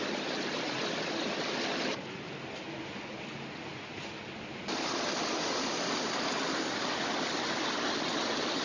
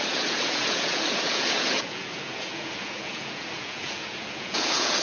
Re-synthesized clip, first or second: second